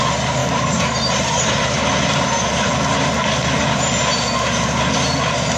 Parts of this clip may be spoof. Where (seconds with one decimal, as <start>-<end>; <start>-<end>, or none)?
none